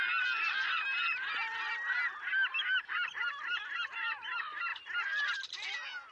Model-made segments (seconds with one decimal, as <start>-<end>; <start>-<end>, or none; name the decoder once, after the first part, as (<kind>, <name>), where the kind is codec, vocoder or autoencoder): 3.1-4.7 (vocoder, BigVGAN v2); 5.3-6.1